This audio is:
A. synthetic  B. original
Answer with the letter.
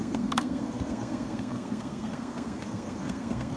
A